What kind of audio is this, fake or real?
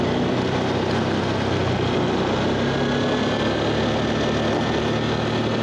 real